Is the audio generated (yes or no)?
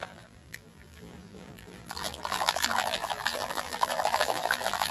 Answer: yes